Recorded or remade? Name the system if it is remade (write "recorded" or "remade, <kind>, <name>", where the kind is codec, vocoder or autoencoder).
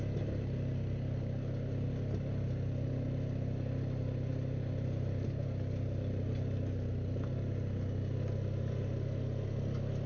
recorded